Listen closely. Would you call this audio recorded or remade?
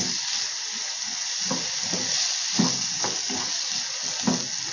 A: recorded